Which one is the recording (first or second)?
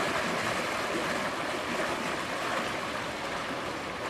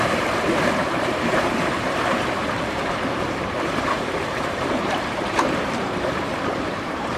first